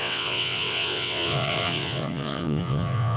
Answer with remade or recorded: remade